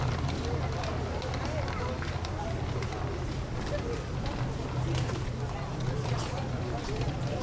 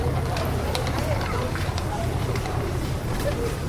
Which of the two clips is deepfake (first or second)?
second